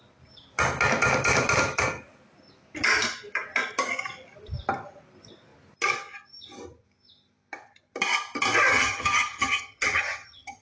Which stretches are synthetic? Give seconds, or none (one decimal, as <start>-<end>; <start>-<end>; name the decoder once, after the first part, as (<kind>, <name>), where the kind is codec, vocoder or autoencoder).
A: 8.7-10.6 (vocoder, HiFi-GAN)